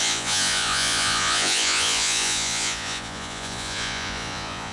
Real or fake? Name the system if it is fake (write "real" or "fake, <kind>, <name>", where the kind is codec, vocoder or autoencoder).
fake, vocoder, Vocos